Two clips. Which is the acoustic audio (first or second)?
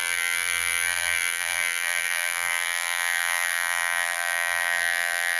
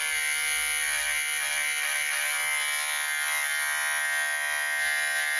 second